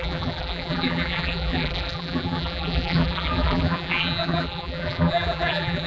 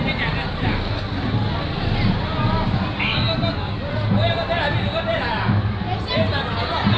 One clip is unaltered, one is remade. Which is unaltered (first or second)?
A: second